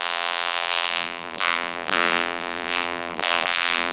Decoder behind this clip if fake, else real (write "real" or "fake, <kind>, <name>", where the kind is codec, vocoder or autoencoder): fake, vocoder, BigVGAN v2